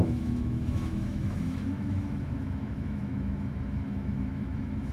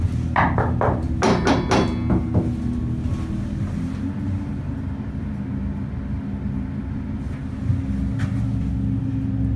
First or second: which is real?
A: second